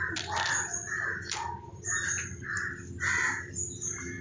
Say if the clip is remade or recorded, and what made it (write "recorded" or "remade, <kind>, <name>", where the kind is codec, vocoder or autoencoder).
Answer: recorded